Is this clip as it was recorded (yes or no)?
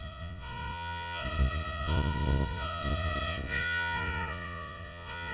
no